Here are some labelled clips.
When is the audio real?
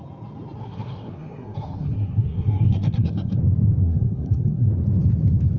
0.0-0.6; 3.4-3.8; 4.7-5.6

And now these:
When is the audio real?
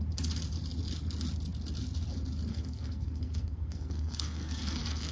0.0-2.5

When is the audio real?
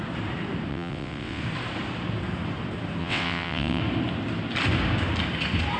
0.0-0.7; 1.4-3.0; 3.8-5.8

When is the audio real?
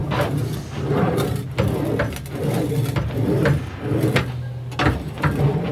0.0-5.7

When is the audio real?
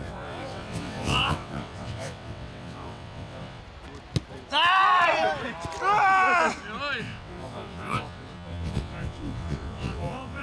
3.6-7.0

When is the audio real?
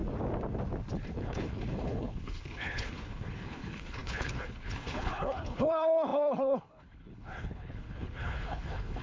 0.0-1.1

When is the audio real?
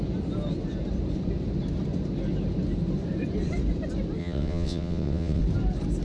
0.0-4.2; 5.4-6.0